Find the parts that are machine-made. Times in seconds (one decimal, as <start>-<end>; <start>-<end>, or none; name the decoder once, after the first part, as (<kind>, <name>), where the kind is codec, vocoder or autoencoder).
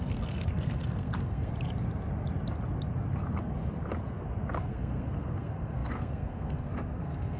0.0-1.5 (codec, SNAC); 4.6-7.4